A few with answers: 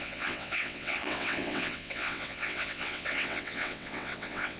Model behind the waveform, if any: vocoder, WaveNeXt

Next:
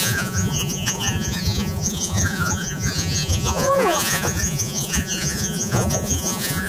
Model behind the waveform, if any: vocoder, Vocos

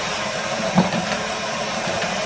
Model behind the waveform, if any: vocoder, BigVGAN v2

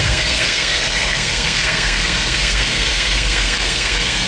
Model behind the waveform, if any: codec, SNAC